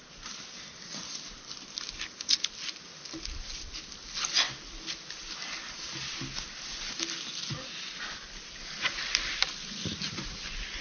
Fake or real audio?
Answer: real